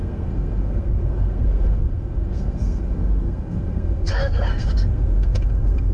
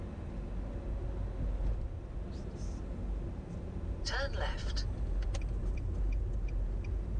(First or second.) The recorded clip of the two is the second